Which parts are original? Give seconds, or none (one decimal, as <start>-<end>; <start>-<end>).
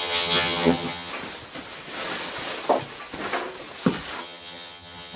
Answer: 1.1-4.2